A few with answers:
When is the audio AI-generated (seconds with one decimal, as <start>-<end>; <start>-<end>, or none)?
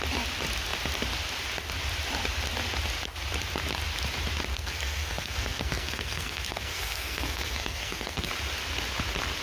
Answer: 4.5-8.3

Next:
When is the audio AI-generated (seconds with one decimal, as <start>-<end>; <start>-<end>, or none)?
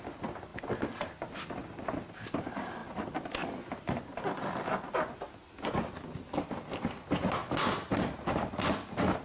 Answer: none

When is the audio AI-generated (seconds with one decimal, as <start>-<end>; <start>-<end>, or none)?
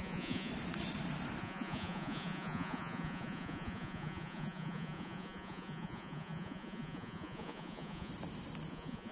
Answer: 0.0-0.5; 1.4-8.1; 8.7-9.1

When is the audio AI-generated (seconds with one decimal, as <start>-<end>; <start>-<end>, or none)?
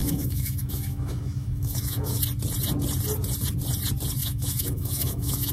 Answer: 0.0-2.2; 4.2-5.5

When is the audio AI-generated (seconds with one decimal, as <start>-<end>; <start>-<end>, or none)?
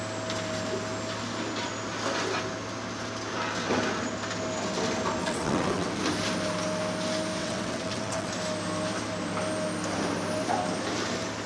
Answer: 5.2-6.0; 7.4-8.3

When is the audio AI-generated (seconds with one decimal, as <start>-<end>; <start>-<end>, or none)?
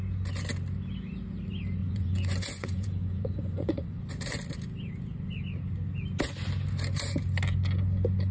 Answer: 1.8-4.1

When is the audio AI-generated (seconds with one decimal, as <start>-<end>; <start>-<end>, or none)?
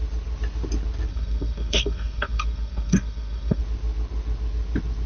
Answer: 1.1-3.6